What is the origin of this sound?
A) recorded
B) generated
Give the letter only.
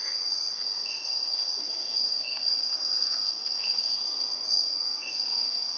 B